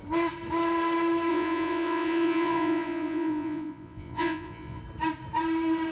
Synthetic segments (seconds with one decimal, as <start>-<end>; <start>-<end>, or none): 1.3-4.8